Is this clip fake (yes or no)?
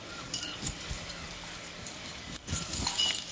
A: yes